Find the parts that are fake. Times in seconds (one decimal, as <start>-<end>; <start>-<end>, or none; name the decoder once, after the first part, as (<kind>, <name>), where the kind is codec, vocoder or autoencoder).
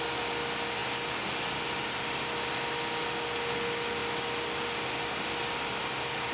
none